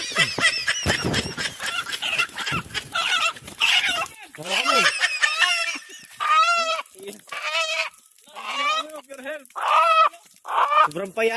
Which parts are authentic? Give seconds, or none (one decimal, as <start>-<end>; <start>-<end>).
0.6-1.5; 5.6-9.1